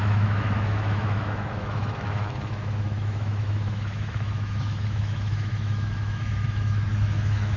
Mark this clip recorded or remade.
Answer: remade